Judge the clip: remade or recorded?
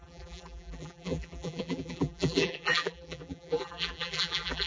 remade